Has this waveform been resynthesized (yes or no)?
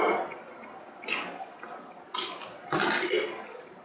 no